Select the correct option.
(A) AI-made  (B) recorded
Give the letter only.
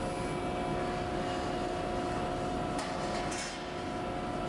B